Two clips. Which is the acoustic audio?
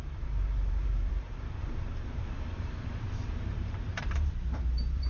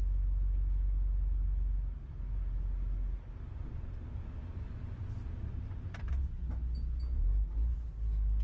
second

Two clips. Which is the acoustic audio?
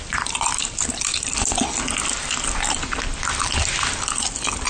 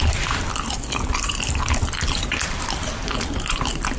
first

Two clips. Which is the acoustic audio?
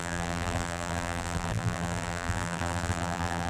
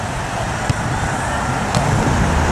second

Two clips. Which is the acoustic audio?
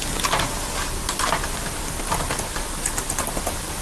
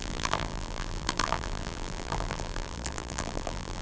first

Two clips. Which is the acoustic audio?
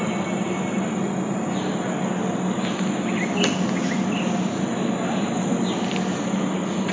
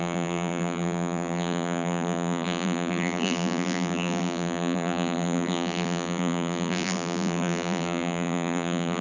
first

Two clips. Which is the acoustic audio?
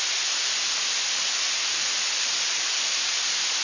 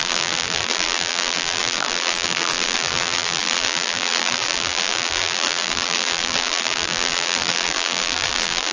first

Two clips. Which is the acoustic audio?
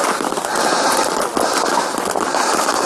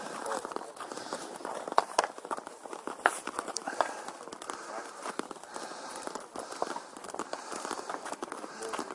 first